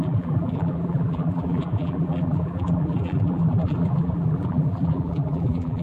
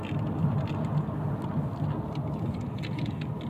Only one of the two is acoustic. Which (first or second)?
second